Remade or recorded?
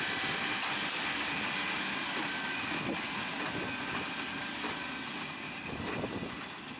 recorded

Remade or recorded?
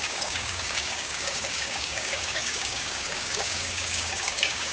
remade